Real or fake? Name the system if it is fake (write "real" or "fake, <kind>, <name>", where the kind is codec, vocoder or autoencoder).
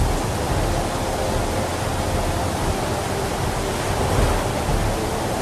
fake, vocoder, BigVGAN v2